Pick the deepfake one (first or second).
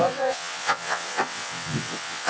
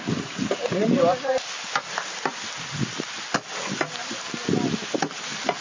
first